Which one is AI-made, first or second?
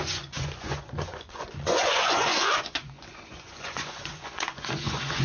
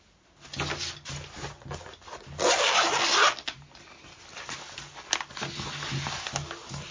first